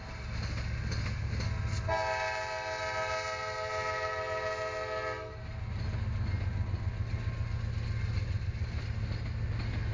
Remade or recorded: recorded